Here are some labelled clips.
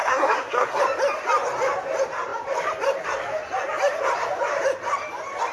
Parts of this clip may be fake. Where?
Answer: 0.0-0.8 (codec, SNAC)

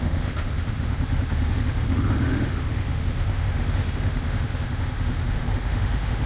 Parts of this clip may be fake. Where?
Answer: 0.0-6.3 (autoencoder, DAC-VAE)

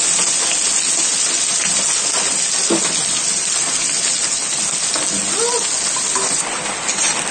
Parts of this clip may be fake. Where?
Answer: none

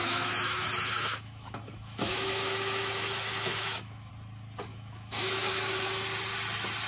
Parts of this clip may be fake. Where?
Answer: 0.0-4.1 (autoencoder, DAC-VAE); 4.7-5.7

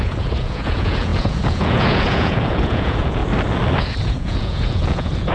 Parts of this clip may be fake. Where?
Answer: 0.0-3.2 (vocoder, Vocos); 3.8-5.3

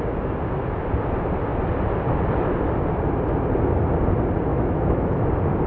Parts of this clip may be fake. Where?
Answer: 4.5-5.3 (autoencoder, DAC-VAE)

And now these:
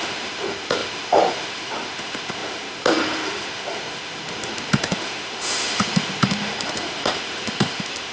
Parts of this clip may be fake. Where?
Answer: 0.0-8.1 (autoencoder, DAC-VAE)